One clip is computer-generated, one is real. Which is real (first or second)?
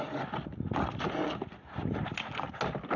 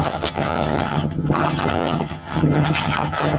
first